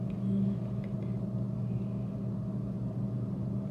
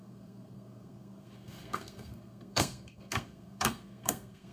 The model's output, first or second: second